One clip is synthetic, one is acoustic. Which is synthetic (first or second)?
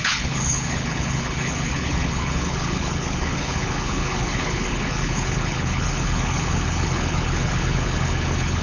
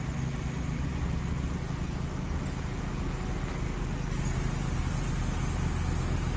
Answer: first